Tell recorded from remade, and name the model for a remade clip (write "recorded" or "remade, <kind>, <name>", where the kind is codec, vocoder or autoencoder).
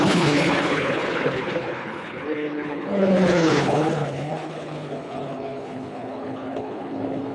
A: remade, codec, HILCodec